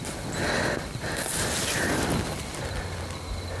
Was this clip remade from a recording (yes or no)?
no